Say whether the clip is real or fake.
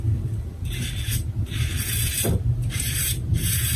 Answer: fake